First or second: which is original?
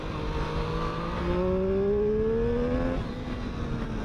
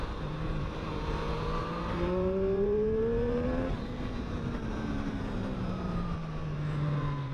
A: first